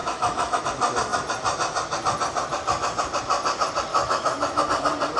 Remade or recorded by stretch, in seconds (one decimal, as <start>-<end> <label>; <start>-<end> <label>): 0.0-0.6 remade; 0.6-3.9 recorded; 3.9-4.6 remade; 4.6-5.2 recorded